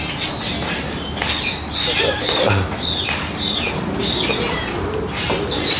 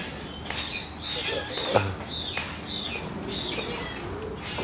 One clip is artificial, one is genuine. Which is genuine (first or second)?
second